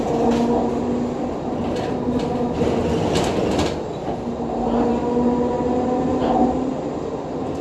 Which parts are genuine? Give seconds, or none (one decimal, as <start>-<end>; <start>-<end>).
0.0-7.6